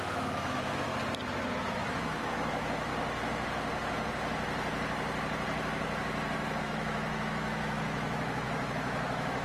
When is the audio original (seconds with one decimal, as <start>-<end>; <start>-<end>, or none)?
0.9-1.6; 2.9-6.6